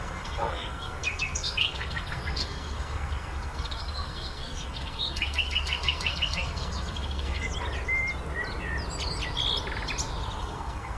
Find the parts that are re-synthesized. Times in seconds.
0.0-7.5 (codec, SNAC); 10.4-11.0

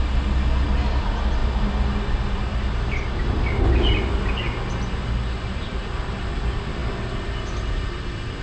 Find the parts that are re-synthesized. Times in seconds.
none

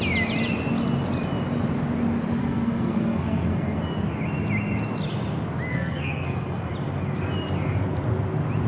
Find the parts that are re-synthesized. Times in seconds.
2.4-3.8 (codec, SNAC); 5.7-6.6